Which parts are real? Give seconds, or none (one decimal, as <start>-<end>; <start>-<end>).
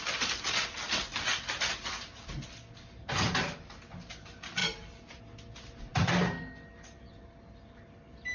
0.0-8.3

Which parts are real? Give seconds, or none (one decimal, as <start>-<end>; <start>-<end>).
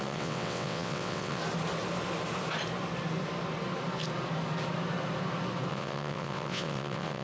1.4-5.7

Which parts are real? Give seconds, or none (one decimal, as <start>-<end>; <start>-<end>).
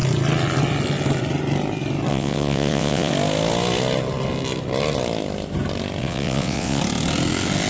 0.0-2.1; 3.1-6.0; 6.8-7.7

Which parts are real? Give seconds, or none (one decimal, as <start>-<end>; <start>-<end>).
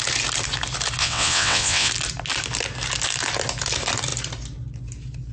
0.0-1.0; 1.9-5.3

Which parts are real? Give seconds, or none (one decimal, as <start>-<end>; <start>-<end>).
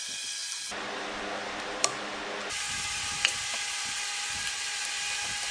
0.0-5.5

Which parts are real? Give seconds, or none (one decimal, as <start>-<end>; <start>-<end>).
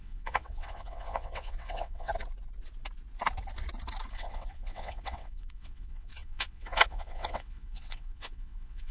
2.1-4.1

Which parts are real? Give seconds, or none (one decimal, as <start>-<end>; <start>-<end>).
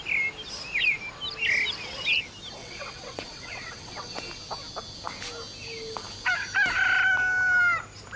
0.0-2.6; 4.2-8.2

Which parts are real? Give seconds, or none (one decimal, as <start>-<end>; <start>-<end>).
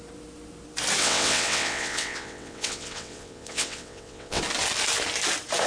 0.0-1.0; 4.4-5.7